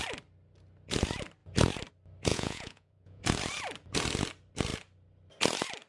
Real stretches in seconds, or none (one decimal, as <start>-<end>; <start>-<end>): 0.0-2.3; 3.2-5.9